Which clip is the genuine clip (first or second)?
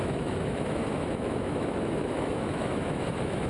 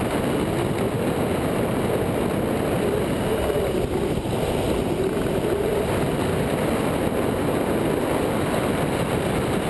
second